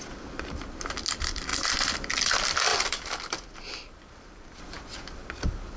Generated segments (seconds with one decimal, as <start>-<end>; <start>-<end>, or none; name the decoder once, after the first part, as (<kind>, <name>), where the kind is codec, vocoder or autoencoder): 1.5-2.3 (vocoder, BigVGAN v2); 2.7-4.6